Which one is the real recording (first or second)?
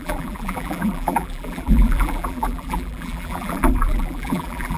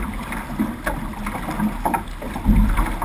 second